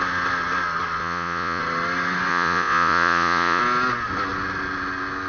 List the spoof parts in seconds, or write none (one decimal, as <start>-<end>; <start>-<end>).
1.0-1.6; 2.3-3.6